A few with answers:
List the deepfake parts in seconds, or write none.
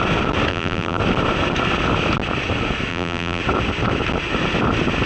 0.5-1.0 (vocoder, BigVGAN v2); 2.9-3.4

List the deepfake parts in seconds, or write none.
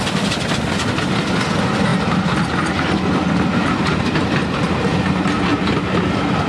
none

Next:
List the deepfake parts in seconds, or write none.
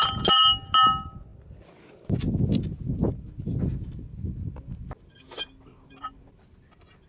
none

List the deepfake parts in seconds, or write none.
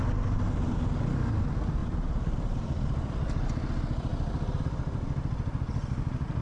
1.8-3.1 (vocoder, BigVGAN v2)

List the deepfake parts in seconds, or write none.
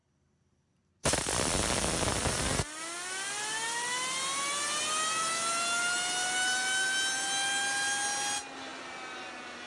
none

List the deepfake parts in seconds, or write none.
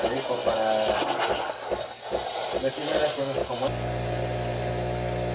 3.4-4.7 (vocoder, BigVGAN v2)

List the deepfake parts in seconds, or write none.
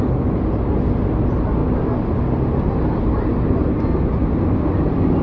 none